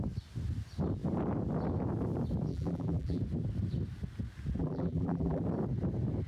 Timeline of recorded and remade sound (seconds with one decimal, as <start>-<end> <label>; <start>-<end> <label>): 0.0-2.5 recorded; 2.5-3.2 remade; 3.2-4.6 recorded; 4.6-5.4 remade; 5.4-6.3 recorded